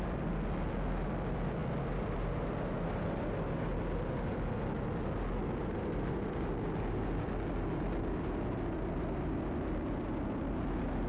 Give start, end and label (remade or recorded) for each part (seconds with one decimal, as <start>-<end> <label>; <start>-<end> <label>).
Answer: 0.0-11.1 recorded